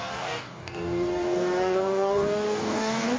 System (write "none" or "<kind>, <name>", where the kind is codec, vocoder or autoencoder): codec, DAC